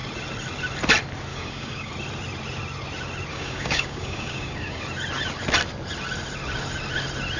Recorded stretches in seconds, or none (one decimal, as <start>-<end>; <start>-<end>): 0.0-1.3; 1.9-3.3; 4.8-7.4